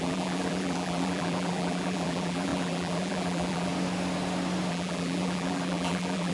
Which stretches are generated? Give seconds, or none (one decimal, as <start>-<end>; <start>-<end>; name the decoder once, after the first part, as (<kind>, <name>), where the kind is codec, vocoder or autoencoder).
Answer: 0.0-3.7 (vocoder, BigVGAN v2); 4.7-6.3